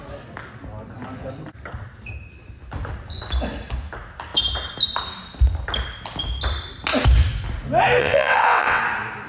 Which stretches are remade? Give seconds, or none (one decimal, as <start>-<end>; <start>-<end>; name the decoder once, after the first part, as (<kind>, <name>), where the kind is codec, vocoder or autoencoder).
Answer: 8.0-8.8 (vocoder, WaveNeXt)